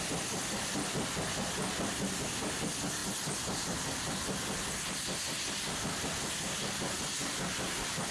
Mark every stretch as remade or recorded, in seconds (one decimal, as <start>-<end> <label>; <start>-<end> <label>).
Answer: 0.0-8.1 recorded